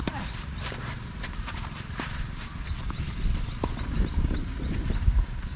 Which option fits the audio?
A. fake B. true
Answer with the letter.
A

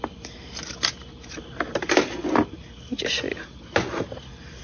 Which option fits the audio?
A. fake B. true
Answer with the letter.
B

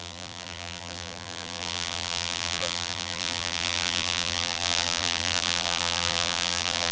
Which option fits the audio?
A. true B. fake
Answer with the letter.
B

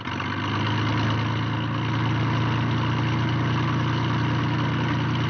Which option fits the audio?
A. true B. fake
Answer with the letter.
A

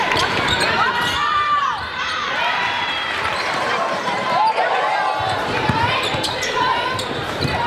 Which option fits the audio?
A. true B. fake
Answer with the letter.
B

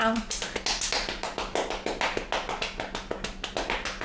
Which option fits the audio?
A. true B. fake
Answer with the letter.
A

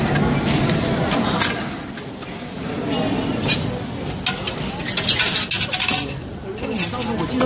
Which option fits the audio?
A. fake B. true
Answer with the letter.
B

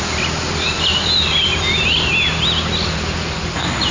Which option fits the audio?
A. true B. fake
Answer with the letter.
A